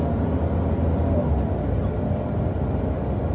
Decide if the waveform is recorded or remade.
recorded